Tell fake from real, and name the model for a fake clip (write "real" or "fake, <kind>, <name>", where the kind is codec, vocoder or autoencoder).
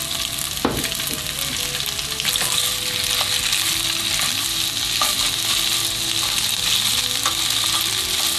real